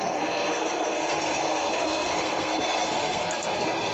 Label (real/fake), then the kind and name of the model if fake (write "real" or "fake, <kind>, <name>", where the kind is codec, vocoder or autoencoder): fake, codec, SNAC